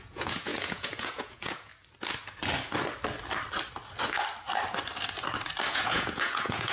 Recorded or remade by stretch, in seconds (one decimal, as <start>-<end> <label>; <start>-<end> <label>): 0.0-1.7 remade; 1.7-5.7 recorded; 5.7-6.7 remade